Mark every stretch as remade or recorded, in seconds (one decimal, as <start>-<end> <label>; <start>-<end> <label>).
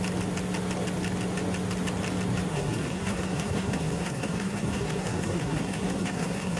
0.0-2.5 recorded; 2.5-6.6 remade